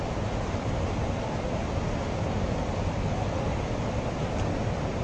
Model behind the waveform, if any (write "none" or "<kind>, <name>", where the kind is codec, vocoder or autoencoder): none